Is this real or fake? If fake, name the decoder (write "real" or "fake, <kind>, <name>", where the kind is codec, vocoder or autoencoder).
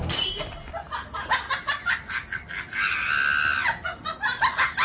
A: real